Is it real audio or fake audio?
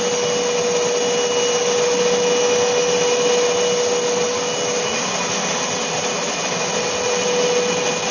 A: real